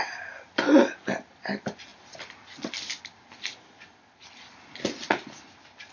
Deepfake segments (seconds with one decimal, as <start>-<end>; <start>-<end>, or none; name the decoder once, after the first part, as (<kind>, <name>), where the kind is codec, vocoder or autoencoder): none